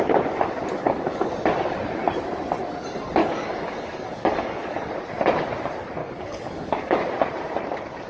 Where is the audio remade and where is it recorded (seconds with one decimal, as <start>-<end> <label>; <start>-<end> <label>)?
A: 0.0-0.8 recorded; 0.8-1.3 remade; 1.3-3.2 recorded; 3.2-4.9 remade; 4.9-6.0 recorded; 6.0-7.0 remade; 7.0-8.1 recorded